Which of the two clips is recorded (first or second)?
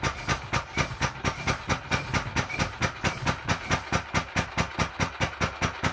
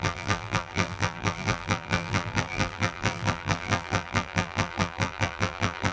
first